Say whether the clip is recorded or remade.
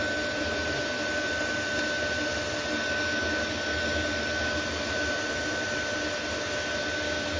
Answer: recorded